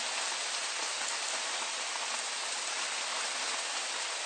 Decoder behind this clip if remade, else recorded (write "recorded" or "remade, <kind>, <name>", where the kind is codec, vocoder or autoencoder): recorded